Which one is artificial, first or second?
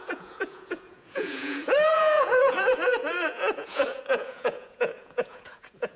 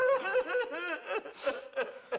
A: first